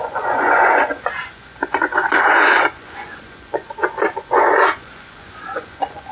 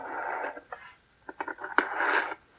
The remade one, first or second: first